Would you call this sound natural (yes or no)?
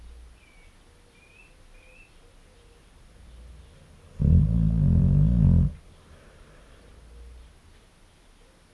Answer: yes